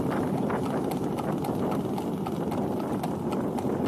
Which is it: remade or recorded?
recorded